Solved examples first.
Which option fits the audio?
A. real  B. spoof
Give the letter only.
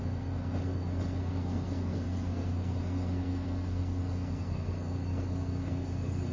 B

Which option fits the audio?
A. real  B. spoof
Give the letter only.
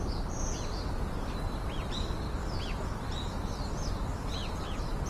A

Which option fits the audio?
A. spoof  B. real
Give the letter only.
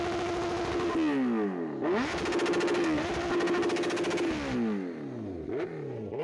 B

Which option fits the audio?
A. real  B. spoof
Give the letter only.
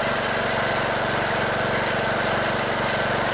A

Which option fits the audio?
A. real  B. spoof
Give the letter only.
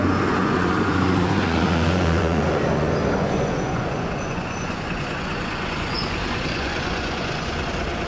B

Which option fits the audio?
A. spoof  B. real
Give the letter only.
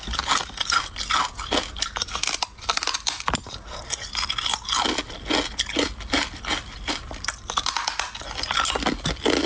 B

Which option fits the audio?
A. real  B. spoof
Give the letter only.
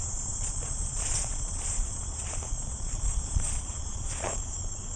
B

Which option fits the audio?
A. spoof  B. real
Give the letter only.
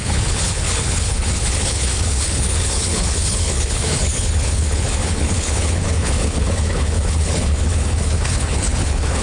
A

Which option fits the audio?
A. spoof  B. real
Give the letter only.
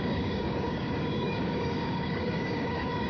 A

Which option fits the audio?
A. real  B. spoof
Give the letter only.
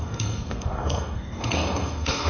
B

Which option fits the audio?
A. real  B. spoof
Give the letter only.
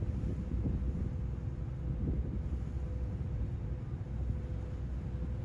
A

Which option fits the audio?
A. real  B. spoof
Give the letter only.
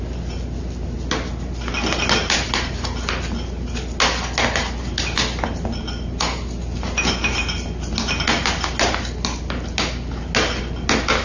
A